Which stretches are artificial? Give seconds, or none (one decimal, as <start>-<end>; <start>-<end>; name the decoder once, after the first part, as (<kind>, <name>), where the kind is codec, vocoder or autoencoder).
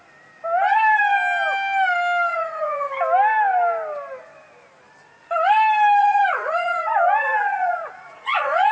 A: 2.3-2.9 (vocoder, Vocos); 6.0-8.7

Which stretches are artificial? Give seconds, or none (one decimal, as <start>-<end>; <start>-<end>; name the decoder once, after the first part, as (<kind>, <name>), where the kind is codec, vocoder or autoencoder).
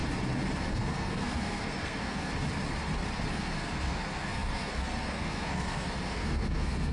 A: 0.7-2.3 (codec, SNAC); 3.3-6.9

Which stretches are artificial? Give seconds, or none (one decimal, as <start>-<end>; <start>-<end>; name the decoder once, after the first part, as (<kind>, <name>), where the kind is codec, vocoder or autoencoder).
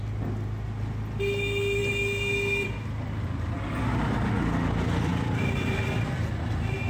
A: 5.1-6.1 (vocoder, BigVGAN v2)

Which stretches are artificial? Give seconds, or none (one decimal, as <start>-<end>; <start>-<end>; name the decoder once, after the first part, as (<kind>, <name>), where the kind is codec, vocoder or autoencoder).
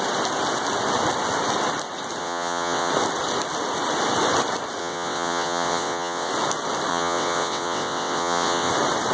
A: 2.2-2.9 (vocoder, WaveNeXt); 4.8-6.3; 6.9-8.7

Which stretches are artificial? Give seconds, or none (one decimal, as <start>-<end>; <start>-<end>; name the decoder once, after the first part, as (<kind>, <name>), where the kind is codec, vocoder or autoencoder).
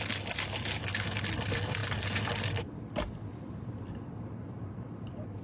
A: none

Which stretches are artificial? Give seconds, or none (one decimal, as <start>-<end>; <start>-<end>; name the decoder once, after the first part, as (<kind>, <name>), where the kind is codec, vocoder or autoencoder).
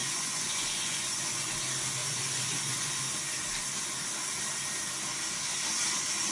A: 0.0-1.5 (vocoder, Vocos); 2.0-3.0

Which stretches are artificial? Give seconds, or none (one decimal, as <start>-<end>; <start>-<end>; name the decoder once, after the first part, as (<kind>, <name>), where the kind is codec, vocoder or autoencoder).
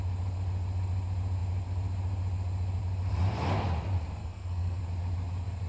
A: 4.2-4.8 (codec, SNAC)